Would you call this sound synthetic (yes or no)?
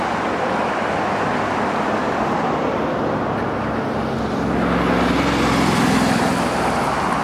no